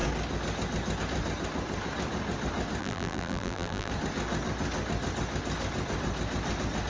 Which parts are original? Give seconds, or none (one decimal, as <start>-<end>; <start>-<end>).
0.0-2.8; 3.9-6.9